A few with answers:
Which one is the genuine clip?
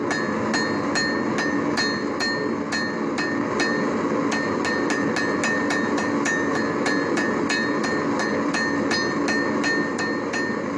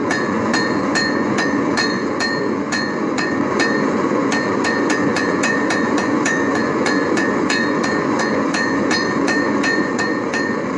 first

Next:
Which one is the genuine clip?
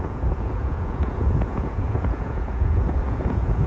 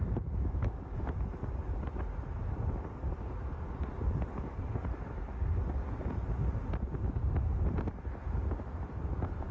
second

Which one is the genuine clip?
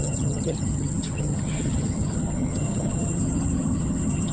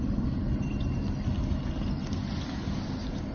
second